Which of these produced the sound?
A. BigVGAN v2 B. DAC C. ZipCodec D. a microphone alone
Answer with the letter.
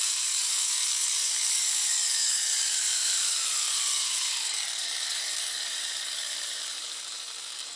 B